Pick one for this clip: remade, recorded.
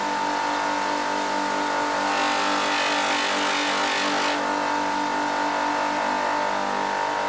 recorded